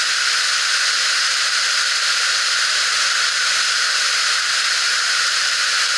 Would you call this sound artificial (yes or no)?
no